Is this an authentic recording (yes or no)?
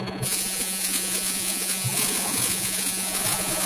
no